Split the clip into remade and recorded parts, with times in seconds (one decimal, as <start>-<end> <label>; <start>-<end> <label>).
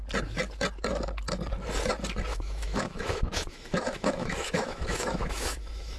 0.0-2.3 recorded; 2.3-6.0 remade